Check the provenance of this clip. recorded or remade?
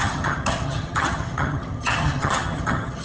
remade